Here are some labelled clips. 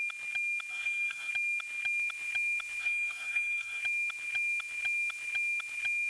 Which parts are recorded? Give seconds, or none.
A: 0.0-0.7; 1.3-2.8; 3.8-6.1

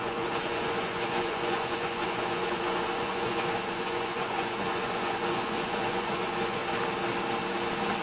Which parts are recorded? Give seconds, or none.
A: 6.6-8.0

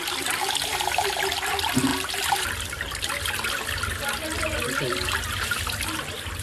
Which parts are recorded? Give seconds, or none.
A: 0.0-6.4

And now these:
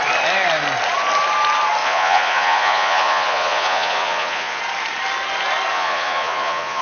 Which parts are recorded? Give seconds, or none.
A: 0.0-1.8; 4.6-5.7

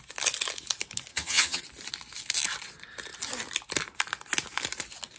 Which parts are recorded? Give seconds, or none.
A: 0.0-1.1; 1.6-5.2

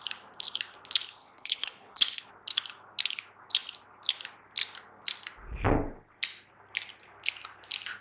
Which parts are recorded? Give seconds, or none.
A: 0.0-1.2; 2.3-8.0

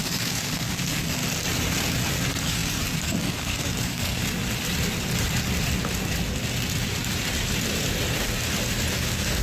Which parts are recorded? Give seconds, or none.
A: 1.2-2.1; 4.2-9.0

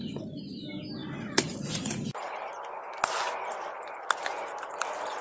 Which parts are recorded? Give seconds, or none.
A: 0.0-5.2